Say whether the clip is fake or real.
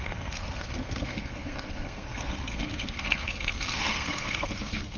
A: fake